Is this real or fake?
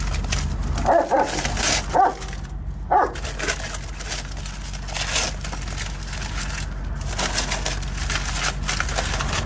real